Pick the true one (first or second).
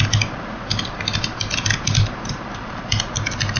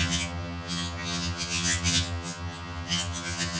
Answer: first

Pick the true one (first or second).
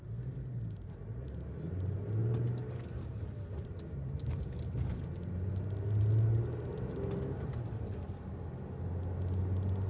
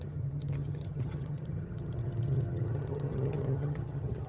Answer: first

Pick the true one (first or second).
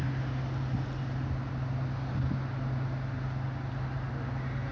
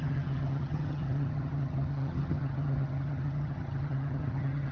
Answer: first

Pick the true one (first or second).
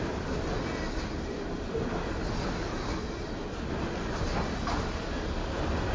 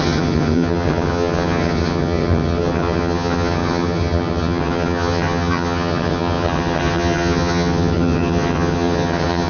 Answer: first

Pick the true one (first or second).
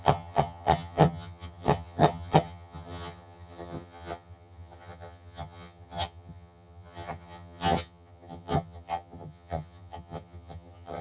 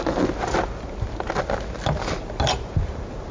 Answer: second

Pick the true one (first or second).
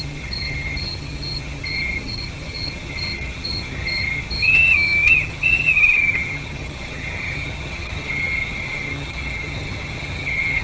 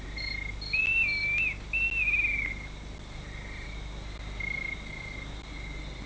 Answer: second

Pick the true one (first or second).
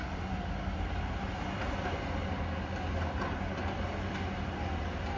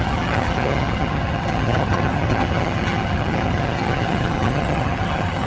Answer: first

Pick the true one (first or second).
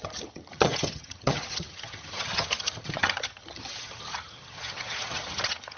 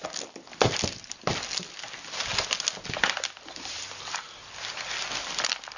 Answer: second